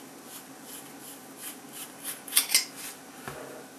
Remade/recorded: recorded